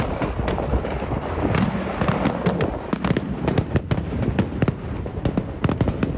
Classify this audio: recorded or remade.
recorded